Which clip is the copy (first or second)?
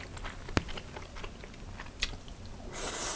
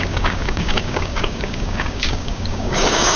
second